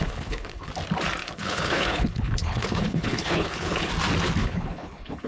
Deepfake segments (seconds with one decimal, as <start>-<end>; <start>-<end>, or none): 0.0-0.7; 1.2-3.9; 4.4-5.3